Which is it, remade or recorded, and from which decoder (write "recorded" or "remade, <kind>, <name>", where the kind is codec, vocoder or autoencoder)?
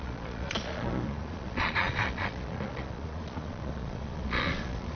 remade, vocoder, Vocos